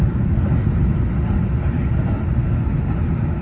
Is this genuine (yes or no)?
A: yes